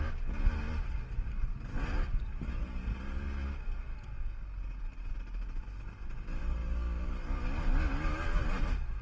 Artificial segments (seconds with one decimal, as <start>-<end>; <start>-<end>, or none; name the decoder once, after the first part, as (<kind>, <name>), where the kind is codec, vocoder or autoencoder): 6.6-7.1 (codec, DAC)